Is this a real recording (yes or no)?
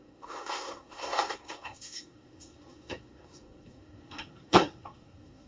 no